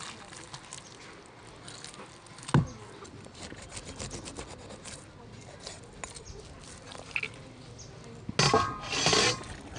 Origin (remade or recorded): recorded